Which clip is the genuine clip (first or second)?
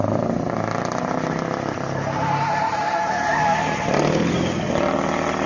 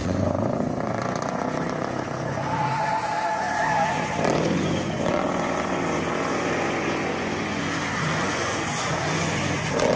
first